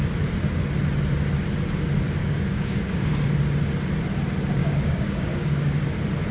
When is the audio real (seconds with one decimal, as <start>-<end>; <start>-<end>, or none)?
0.0-2.2; 3.1-4.6; 5.8-6.3